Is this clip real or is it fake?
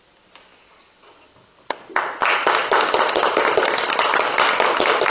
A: real